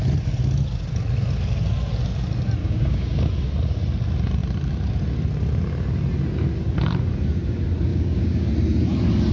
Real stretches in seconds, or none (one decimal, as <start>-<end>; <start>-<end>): 0.0-2.6; 3.3-7.9; 8.5-9.3